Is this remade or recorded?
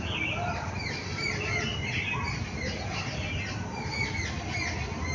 recorded